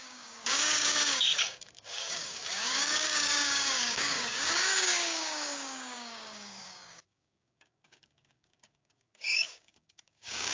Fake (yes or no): yes